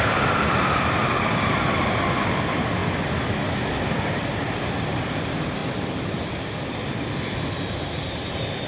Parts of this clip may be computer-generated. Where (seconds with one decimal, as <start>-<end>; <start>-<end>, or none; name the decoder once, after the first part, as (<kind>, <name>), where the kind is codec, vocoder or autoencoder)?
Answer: 0.0-2.8 (vocoder, BigVGAN v2); 3.9-8.7

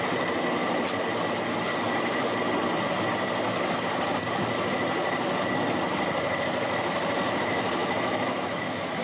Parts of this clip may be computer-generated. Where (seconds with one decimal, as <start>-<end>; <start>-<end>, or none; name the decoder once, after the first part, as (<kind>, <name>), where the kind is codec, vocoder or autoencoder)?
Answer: 7.8-9.0 (autoencoder, DAC-VAE)